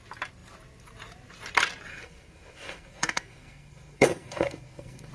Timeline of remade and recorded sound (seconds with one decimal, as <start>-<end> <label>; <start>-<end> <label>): 0.0-1.9 recorded; 1.9-5.1 remade